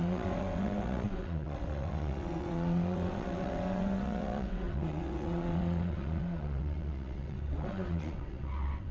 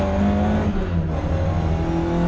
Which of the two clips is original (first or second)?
second